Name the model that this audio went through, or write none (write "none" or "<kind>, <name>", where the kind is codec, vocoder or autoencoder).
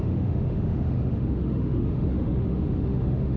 autoencoder, DAC-VAE